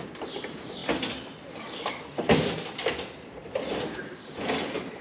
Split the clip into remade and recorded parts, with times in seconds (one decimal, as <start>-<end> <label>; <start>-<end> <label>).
0.0-0.8 remade; 0.8-2.7 recorded; 2.7-5.0 remade